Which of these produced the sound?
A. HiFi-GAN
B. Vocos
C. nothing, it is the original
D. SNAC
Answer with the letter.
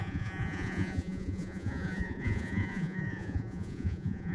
B